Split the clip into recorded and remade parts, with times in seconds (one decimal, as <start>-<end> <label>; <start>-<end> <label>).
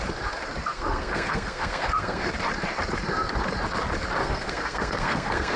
0.0-0.7 recorded; 0.7-2.3 remade; 2.3-4.2 recorded; 4.2-5.6 remade